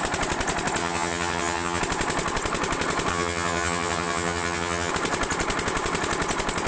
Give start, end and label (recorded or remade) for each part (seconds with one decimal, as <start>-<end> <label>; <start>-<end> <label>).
0.0-0.8 recorded; 0.8-1.8 remade; 1.8-3.1 recorded; 3.1-4.9 remade; 4.9-6.7 recorded